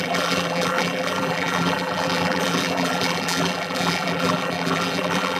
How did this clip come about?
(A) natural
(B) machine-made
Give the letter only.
B